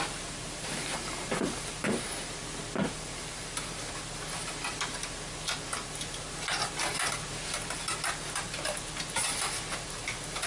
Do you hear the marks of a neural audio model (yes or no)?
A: no